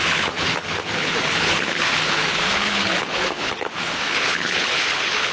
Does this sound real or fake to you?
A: fake